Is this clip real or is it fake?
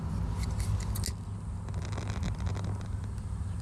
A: real